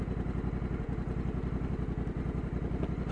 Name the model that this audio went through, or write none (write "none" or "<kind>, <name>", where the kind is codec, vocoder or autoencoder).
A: none